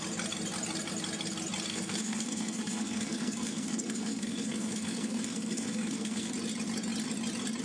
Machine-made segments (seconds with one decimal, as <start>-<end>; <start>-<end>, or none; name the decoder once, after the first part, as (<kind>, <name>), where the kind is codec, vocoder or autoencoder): 1.7-6.3 (codec, SNAC)